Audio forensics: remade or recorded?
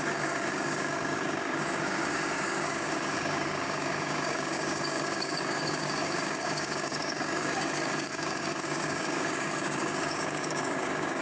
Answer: remade